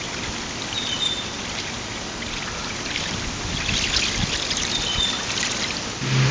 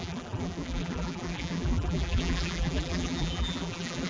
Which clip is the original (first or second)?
first